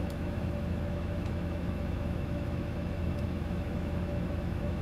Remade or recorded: remade